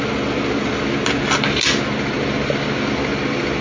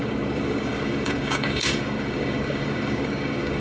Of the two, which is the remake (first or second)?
second